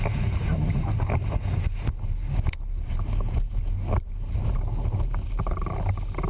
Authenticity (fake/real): real